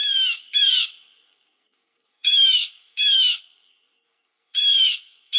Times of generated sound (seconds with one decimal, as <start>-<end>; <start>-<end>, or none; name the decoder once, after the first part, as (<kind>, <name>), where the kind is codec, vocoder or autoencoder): 0.0-5.4 (codec, SNAC)